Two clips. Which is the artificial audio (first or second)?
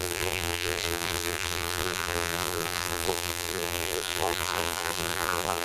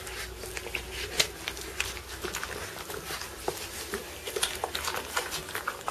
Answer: first